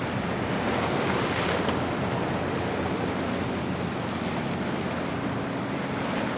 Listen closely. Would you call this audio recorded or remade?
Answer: recorded